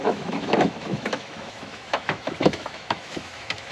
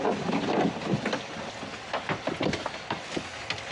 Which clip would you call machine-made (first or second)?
first